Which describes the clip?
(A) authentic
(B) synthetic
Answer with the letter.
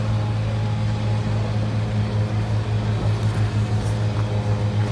A